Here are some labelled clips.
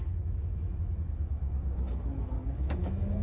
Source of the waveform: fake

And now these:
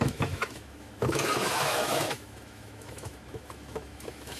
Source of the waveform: fake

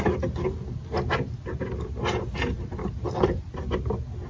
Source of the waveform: real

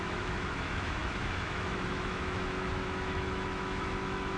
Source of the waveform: fake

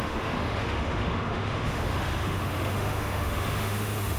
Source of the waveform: fake